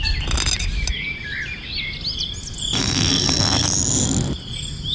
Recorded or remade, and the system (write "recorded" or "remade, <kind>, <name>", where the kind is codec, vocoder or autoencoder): recorded